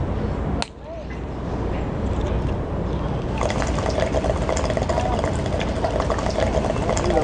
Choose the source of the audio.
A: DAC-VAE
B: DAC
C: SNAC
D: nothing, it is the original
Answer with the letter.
D